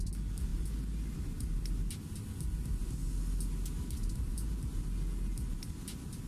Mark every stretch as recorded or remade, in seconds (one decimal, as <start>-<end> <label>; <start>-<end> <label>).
0.0-6.3 recorded